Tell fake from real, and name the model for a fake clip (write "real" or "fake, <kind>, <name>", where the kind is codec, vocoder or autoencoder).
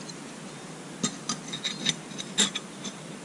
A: real